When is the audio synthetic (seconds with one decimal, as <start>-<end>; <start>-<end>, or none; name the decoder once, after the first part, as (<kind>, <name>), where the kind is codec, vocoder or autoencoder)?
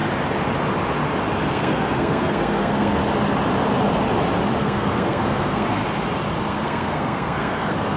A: 1.5-3.0 (codec, SNAC); 4.6-5.8; 6.5-8.0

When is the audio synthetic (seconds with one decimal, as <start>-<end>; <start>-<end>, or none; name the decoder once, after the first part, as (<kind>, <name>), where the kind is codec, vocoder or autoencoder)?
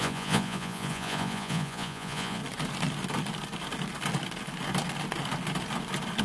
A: 0.0-2.4 (vocoder, Vocos)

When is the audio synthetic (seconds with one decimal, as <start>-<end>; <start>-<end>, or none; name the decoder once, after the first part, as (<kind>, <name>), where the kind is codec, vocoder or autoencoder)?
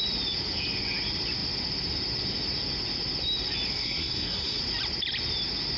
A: 3.8-4.6 (codec, SNAC)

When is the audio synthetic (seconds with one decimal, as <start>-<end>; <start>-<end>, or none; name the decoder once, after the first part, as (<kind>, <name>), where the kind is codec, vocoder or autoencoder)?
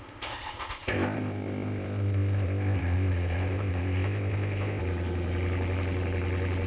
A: 0.0-4.8 (codec, ZipCodec)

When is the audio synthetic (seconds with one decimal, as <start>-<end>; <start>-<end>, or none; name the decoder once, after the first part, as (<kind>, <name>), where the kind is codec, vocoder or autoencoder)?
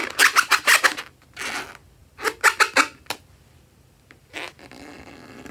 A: none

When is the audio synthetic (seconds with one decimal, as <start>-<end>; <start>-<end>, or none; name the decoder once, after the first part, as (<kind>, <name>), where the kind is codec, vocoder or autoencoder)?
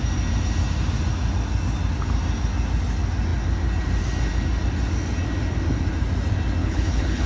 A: 6.6-7.3 (codec, HILCodec)